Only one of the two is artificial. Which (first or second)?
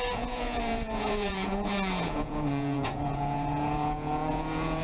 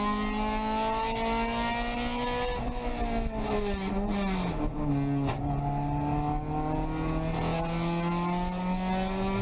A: first